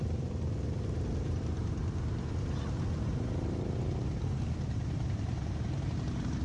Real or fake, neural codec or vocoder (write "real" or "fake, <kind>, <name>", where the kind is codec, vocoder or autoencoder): fake, vocoder, BigVGAN v2